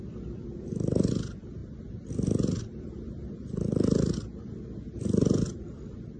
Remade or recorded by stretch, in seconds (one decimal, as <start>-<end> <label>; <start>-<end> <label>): 0.0-6.2 recorded